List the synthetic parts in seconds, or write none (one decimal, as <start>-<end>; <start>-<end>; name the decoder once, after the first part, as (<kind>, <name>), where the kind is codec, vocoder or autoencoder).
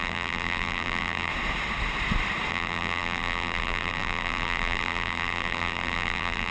0.0-1.3 (vocoder, BigVGAN v2); 2.5-6.5